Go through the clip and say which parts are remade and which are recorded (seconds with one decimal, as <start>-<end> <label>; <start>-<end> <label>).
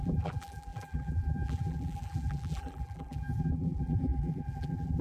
0.0-5.0 remade